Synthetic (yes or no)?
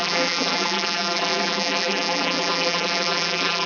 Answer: yes